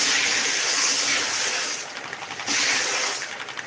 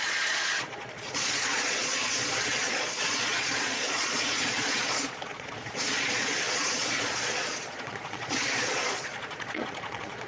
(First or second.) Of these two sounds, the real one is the first